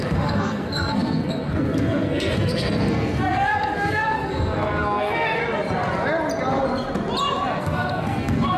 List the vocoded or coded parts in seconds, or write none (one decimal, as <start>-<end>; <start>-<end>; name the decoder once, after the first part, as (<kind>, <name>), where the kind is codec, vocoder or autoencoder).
0.0-5.4 (codec, SNAC); 7.6-8.6